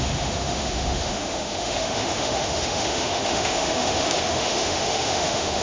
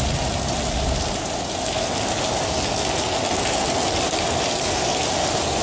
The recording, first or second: second